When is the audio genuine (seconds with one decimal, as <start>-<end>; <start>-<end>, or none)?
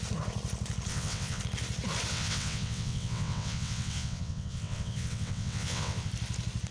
0.0-0.9; 1.4-2.1; 6.1-6.7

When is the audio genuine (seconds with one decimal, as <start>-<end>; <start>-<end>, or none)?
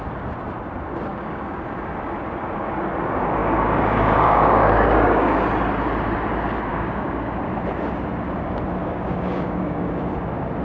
0.0-1.1; 1.6-3.4; 5.5-6.7; 7.4-8.8; 9.9-10.6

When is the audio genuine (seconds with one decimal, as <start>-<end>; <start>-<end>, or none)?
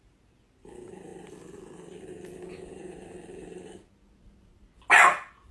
0.0-5.5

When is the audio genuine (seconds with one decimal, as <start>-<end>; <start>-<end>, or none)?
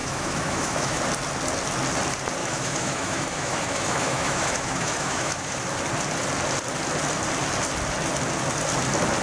1.0-2.4; 5.6-9.2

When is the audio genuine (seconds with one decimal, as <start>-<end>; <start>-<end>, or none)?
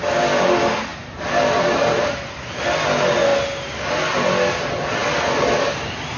0.0-0.9; 2.4-6.2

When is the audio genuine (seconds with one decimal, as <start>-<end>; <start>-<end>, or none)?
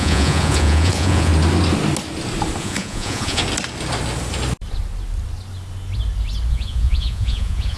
1.3-2.6; 3.4-6.5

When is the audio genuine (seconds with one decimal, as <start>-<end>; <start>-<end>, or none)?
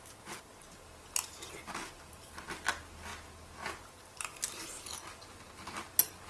0.0-6.3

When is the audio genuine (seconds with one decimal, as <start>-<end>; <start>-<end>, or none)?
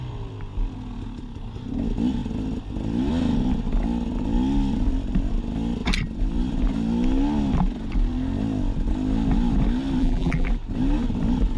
0.0-10.0; 10.5-11.6